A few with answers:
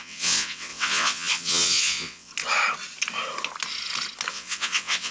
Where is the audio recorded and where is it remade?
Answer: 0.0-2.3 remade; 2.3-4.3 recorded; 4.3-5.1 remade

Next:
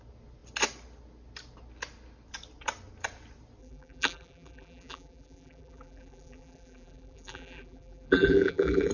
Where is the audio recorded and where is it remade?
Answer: 0.0-3.6 recorded; 3.6-8.9 remade